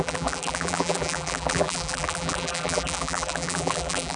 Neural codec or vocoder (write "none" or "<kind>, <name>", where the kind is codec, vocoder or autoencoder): vocoder, BigVGAN v2